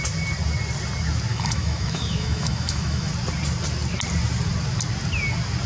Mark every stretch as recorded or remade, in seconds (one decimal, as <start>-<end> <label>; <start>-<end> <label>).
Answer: 0.0-1.3 recorded; 1.3-3.1 remade; 3.1-5.7 recorded